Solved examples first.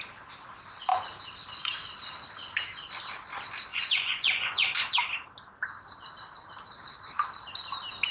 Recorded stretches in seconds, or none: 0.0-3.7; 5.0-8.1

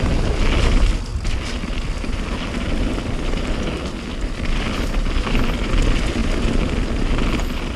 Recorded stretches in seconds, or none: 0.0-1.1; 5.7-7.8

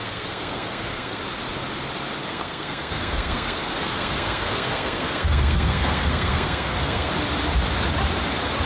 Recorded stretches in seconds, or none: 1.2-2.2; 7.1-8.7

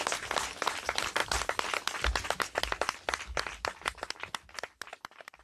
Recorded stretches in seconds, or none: 0.0-5.4

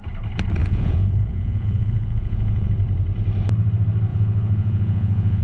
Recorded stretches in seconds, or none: 0.0-0.6; 2.7-4.1